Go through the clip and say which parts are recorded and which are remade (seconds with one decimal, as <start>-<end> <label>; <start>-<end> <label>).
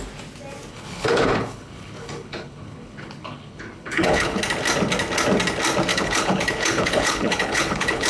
0.0-0.7 recorded; 0.7-4.4 remade; 4.4-5.9 recorded; 5.9-8.1 remade